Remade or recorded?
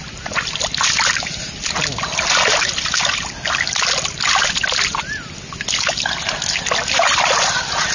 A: recorded